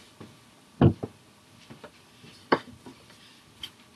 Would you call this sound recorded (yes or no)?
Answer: no